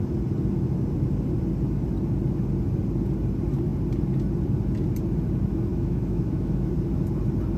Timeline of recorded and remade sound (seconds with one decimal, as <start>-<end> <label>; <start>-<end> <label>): 0.0-5.7 recorded; 5.7-6.7 remade; 6.7-7.6 recorded